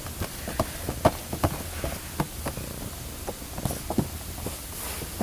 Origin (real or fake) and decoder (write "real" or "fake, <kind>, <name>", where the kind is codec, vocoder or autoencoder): real